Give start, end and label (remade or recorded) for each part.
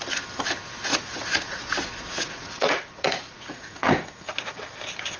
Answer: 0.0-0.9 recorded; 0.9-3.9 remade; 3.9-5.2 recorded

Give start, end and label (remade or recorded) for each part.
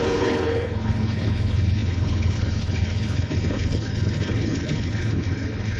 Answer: 0.0-5.8 remade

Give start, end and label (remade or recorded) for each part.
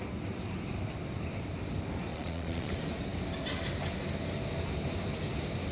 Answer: 0.0-2.1 recorded; 2.1-2.7 remade; 2.7-5.7 recorded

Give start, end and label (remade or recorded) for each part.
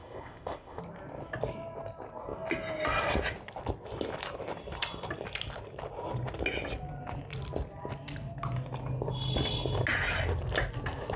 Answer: 0.0-0.8 remade; 0.8-11.2 recorded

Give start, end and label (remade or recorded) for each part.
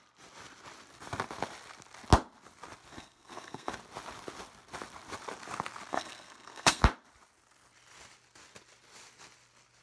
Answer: 0.0-2.9 recorded; 2.9-3.7 remade; 3.7-5.9 recorded; 5.9-6.8 remade; 6.8-9.8 recorded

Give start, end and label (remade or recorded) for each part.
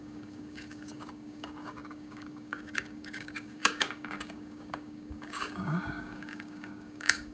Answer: 0.0-7.3 remade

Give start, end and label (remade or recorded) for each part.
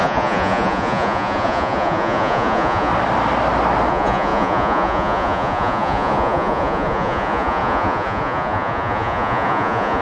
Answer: 0.0-2.9 remade; 2.9-3.9 recorded; 3.9-10.0 remade